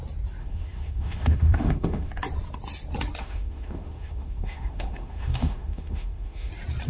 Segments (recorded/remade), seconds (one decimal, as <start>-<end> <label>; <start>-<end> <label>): 0.0-0.4 recorded; 0.4-2.1 remade; 2.1-3.2 recorded; 3.2-6.5 remade; 6.5-6.9 recorded